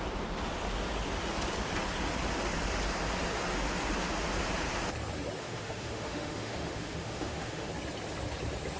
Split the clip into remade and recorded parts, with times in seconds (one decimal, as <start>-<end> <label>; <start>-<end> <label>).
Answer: 0.0-5.4 recorded; 5.4-7.7 remade; 7.7-8.8 recorded